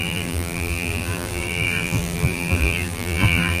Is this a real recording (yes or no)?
no